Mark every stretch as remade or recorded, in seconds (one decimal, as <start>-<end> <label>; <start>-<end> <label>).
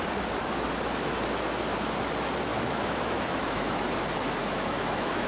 0.0-2.5 recorded; 2.5-3.9 remade; 3.9-4.4 recorded; 4.4-5.3 remade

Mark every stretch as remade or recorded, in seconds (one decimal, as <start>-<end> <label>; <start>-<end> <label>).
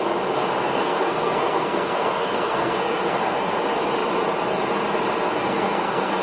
0.0-0.6 recorded; 0.6-3.6 remade; 3.6-5.4 recorded; 5.4-6.2 remade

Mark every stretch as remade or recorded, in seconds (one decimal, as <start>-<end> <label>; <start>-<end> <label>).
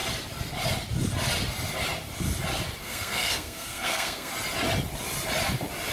0.0-2.8 recorded; 2.8-4.3 remade; 4.3-5.9 recorded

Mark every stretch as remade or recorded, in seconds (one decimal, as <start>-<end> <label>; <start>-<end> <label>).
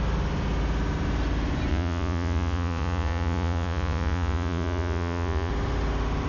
0.0-1.7 recorded; 1.7-5.5 remade; 5.5-6.3 recorded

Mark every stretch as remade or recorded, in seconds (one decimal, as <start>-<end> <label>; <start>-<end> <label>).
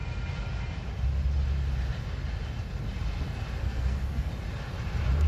0.0-3.6 recorded; 3.6-4.3 remade; 4.3-5.3 recorded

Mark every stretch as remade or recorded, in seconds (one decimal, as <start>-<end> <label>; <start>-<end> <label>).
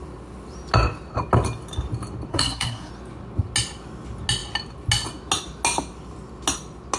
0.0-2.3 recorded; 2.3-2.9 remade; 2.9-7.0 recorded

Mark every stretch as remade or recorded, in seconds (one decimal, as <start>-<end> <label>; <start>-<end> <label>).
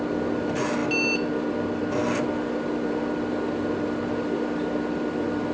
0.0-5.5 recorded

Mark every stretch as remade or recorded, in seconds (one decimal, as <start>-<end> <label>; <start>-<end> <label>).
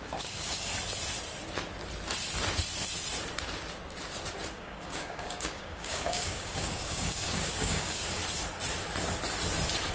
0.0-0.7 remade; 0.7-4.5 recorded; 4.5-8.2 remade; 8.2-9.9 recorded